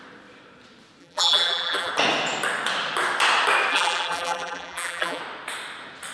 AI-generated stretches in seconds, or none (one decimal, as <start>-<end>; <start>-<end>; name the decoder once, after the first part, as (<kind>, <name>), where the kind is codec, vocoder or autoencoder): 1.0-1.9 (vocoder, BigVGAN v2); 3.7-5.2